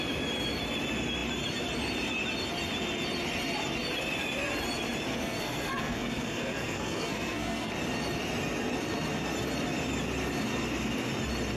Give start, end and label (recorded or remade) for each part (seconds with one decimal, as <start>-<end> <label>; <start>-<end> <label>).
0.0-5.1 recorded; 5.1-7.7 remade; 7.7-11.6 recorded